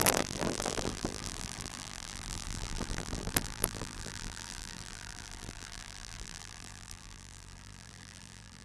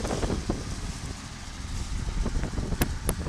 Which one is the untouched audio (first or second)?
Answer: second